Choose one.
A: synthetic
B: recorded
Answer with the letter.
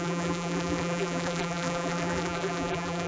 A